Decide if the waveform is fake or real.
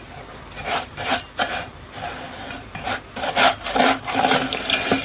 fake